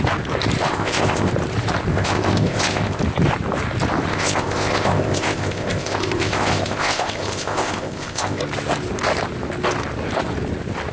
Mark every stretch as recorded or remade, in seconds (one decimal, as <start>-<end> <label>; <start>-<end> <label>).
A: 0.0-0.7 recorded; 0.7-1.3 remade; 1.3-1.9 recorded; 1.9-3.0 remade; 3.0-4.1 recorded; 4.1-8.4 remade; 8.4-10.9 recorded

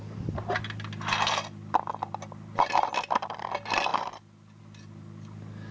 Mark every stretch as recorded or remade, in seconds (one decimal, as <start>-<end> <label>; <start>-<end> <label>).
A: 0.0-5.7 recorded

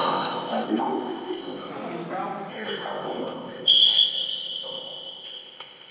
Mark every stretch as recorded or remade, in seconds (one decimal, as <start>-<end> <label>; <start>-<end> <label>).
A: 0.0-1.7 remade; 1.7-2.5 recorded; 2.5-5.9 remade

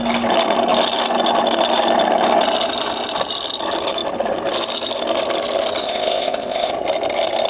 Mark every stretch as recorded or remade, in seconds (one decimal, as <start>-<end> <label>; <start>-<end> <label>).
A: 0.0-5.8 recorded; 5.8-6.7 remade; 6.7-7.5 recorded

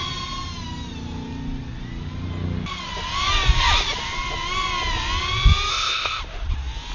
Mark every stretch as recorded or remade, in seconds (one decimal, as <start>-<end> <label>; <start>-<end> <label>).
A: 0.0-5.7 recorded; 5.7-6.2 remade; 6.2-6.9 recorded

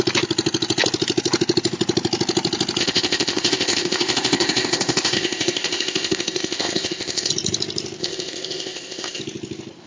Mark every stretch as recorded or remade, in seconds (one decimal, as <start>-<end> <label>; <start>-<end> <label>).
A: 0.0-2.8 recorded; 2.8-7.3 remade; 7.3-8.0 recorded; 8.0-9.2 remade; 9.2-9.9 recorded